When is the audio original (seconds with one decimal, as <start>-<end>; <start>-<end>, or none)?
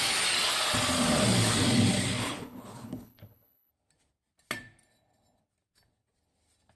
0.0-2.2; 3.7-6.8